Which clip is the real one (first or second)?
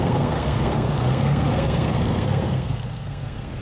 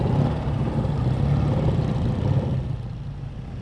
second